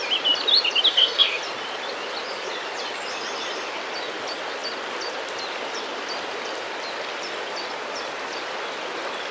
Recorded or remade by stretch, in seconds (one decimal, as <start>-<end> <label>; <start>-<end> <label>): 0.0-0.9 recorded; 0.9-1.4 remade; 1.4-9.3 recorded